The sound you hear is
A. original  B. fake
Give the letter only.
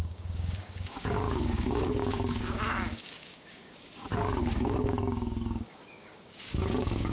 B